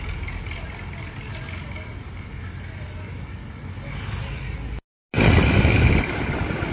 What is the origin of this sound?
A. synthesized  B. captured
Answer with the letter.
B